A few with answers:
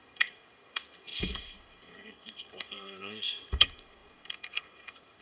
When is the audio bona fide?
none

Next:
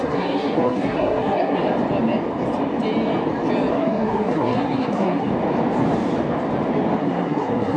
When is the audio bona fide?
1.6-3.7; 5.3-7.0

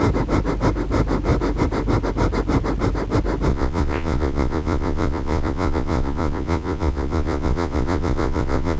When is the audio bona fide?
0.0-3.5